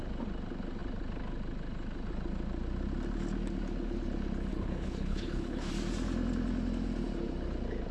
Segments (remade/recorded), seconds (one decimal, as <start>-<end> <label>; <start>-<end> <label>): 0.0-4.5 recorded; 4.5-5.7 remade; 5.7-7.9 recorded